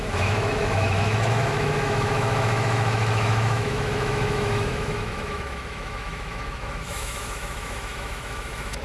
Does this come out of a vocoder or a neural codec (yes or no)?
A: yes